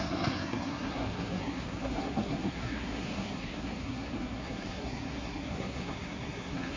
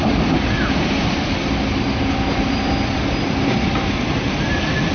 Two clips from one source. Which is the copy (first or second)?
first